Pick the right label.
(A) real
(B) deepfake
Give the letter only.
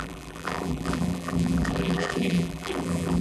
B